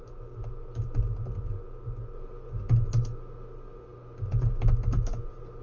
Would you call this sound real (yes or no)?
yes